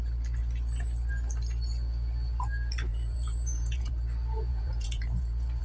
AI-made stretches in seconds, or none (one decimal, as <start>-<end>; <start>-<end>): 2.9-3.9; 4.5-5.6